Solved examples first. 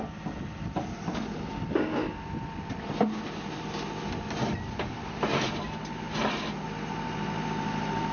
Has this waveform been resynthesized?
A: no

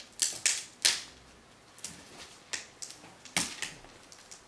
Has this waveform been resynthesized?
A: no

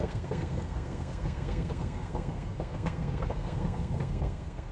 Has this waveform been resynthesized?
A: yes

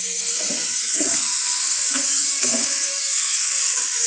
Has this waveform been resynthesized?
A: yes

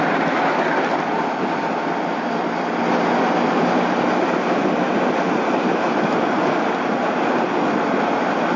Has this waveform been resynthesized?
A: no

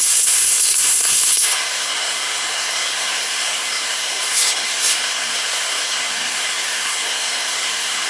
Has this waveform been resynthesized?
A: yes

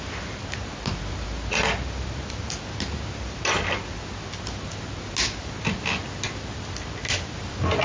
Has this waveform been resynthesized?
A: no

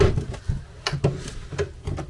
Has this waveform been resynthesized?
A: no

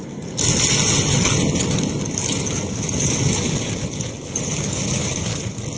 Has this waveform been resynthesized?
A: no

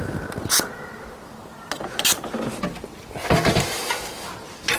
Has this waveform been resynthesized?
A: no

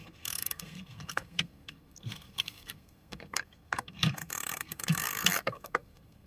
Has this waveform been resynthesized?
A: yes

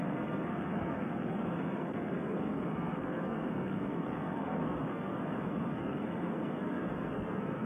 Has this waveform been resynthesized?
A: yes